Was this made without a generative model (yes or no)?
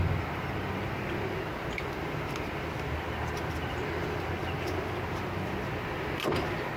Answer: yes